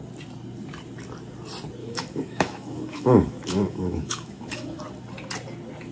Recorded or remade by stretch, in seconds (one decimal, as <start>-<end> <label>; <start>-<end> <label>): 0.0-1.8 recorded; 1.8-4.8 remade; 4.8-5.9 recorded